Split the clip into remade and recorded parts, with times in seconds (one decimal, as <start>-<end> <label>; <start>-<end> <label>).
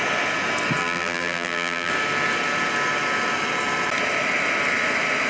0.0-0.8 recorded; 0.8-1.9 remade; 1.9-5.3 recorded